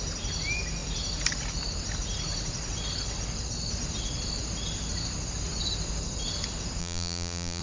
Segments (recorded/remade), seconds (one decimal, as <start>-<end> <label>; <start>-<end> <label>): 0.0-6.8 recorded; 6.8-7.6 remade